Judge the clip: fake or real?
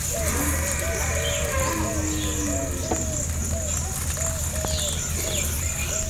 real